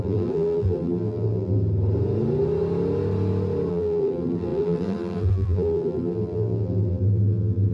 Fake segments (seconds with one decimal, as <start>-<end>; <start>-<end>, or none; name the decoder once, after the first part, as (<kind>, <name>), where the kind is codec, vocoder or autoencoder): 0.0-1.6 (vocoder, BigVGAN v2); 3.7-7.7